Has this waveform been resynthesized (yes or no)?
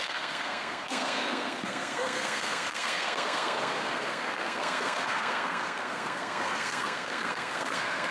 yes